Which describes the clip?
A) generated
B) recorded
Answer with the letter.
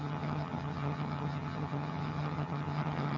A